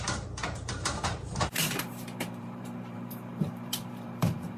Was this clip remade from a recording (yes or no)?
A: yes